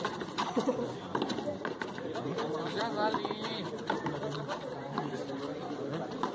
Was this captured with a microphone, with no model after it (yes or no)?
no